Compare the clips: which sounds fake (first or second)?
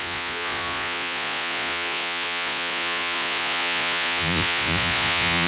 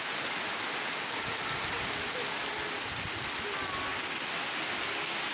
first